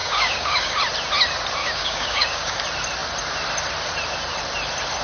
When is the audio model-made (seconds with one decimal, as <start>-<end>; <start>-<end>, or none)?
0.0-0.8; 1.6-2.6